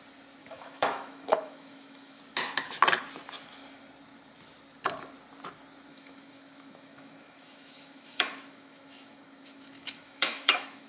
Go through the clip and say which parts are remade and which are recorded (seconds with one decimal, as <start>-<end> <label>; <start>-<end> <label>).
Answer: 0.0-0.4 recorded; 0.4-2.2 remade; 2.2-5.9 recorded; 5.9-10.9 remade